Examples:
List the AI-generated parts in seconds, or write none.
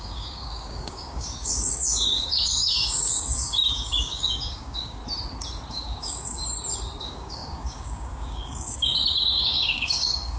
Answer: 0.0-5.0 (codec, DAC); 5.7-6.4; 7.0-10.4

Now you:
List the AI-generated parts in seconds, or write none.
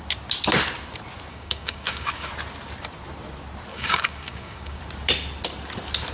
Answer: 1.3-2.3 (codec, DAC); 3.7-4.8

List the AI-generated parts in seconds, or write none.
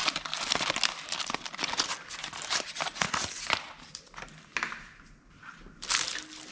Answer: none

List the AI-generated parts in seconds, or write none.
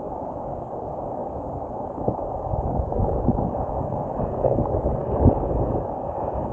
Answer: 0.0-6.5 (codec, DAC)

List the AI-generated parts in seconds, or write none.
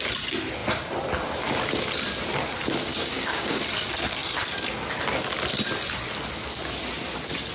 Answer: 2.9-3.6 (codec, DAC)